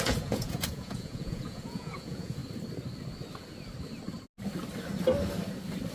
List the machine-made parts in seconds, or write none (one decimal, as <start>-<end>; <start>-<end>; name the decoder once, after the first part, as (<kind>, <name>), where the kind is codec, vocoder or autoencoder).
0.0-2.4 (vocoder, Vocos)